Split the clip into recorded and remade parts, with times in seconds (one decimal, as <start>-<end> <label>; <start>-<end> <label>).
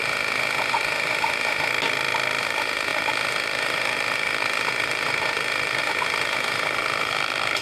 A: 0.0-1.7 remade; 1.7-2.4 recorded; 2.4-7.6 remade